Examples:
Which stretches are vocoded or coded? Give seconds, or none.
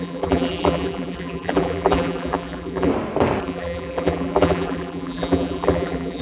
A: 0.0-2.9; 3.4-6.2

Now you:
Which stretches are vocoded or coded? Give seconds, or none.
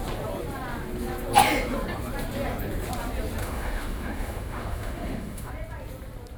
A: 3.4-5.5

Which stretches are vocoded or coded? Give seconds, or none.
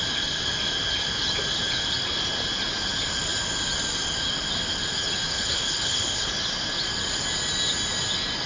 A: 5.3-6.3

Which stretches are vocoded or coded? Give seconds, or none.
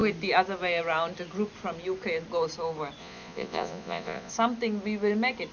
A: 3.0-4.3